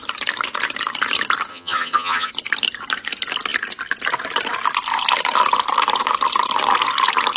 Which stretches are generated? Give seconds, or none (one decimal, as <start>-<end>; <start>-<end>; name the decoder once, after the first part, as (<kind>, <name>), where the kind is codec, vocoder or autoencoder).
1.5-2.3 (vocoder, HiFi-GAN)